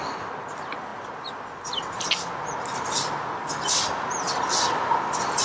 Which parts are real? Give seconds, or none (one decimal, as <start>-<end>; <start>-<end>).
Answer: 0.0-5.4